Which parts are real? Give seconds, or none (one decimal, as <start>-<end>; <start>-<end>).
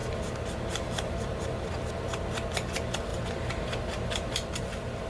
1.9-3.1